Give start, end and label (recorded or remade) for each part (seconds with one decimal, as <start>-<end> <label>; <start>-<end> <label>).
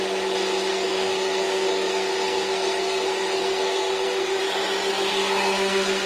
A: 0.0-0.7 recorded; 0.7-4.4 remade; 4.4-5.1 recorded; 5.1-6.1 remade